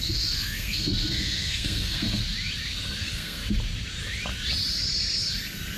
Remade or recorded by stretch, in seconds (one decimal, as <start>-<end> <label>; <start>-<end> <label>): 0.0-2.2 remade; 2.2-3.0 recorded; 3.0-3.4 remade; 3.4-5.8 recorded